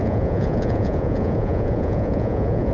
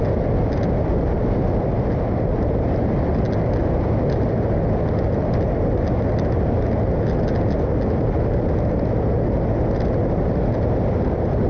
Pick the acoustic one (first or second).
second